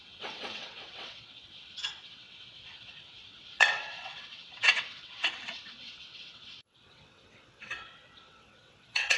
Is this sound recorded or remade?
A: remade